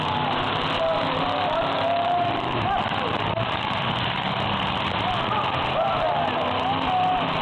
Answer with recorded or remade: remade